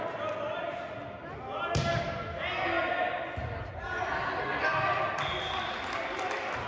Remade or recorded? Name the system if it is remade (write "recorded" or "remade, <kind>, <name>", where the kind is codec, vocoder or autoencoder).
recorded